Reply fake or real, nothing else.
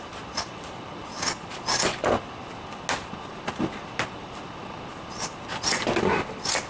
real